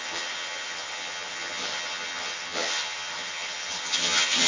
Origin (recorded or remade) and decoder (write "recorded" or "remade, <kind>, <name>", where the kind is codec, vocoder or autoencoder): remade, vocoder, HiFi-GAN